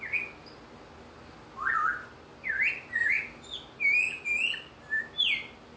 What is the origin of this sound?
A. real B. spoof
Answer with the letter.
A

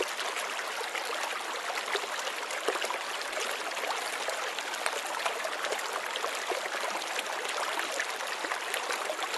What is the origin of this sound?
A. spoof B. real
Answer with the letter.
B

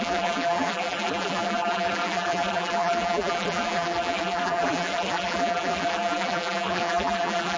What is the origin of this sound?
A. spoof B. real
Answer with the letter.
A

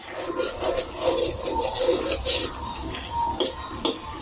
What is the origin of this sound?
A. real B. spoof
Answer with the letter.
A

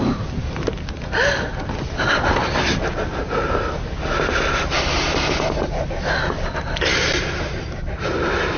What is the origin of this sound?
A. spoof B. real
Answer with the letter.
B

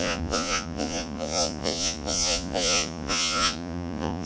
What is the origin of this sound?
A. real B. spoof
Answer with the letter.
B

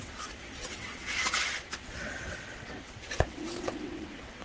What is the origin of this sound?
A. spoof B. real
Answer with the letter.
A